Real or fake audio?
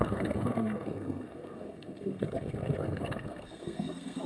fake